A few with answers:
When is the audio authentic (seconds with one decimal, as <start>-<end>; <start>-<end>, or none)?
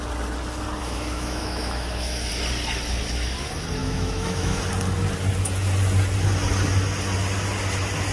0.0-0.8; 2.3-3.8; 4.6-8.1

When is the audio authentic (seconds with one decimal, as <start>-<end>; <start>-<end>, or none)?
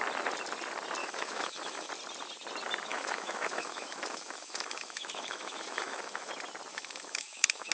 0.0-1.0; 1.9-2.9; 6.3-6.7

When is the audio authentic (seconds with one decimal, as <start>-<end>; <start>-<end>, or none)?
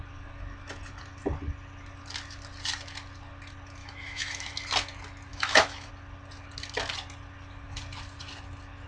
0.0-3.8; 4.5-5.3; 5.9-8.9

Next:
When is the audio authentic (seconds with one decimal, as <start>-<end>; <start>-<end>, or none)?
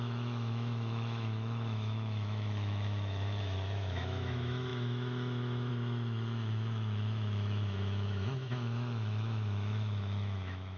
none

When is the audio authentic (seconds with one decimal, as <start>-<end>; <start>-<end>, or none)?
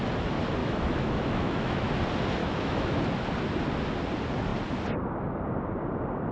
0.0-0.6; 1.9-2.4; 3.0-6.3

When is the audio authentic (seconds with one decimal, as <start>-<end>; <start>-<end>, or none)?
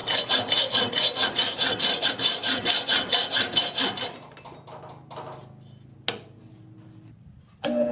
0.0-7.9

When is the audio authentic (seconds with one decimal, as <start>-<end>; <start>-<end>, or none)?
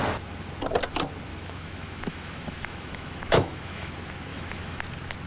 0.0-1.3; 3.9-4.3; 4.8-5.3